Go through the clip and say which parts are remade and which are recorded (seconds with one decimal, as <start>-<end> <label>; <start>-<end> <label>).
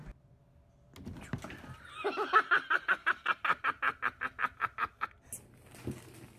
0.0-6.4 recorded